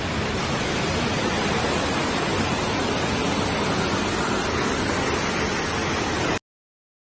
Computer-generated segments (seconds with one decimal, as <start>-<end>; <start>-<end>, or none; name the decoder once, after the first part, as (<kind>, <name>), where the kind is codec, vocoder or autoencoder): none